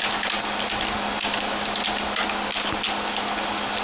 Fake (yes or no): no